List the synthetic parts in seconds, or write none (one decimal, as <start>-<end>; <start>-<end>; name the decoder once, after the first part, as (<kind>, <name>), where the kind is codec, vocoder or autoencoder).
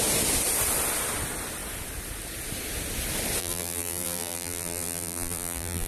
3.4-5.9 (vocoder, BigVGAN v2)